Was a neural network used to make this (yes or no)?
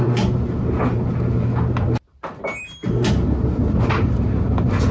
no